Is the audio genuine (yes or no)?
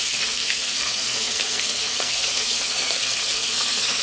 no